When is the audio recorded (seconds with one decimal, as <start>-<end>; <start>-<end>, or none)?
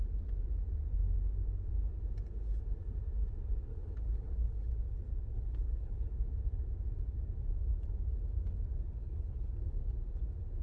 0.0-3.7; 4.7-5.3; 6.1-9.0; 9.8-10.6